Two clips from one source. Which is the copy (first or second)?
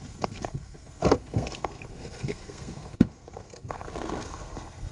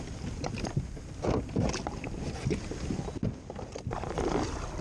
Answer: first